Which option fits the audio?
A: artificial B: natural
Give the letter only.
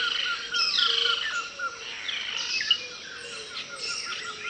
B